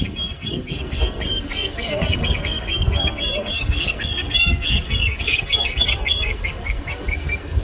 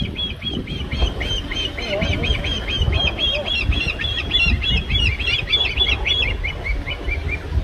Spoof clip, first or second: first